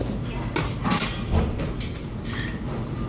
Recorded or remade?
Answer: recorded